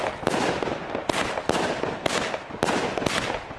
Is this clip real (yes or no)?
yes